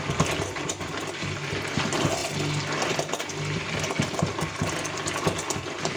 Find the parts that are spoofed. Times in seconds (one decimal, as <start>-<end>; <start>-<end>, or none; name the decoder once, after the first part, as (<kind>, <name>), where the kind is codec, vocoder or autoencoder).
none